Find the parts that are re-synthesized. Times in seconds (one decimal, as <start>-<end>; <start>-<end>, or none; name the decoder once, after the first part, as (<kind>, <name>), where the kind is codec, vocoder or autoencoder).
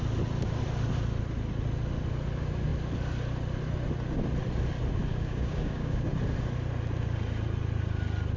5.1-6.1 (codec, DAC)